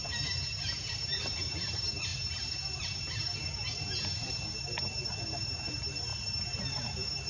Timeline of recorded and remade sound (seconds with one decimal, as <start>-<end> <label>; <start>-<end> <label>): 0.0-7.3 recorded